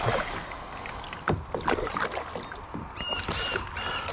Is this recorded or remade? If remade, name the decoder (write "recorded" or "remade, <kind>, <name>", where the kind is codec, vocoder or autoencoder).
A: recorded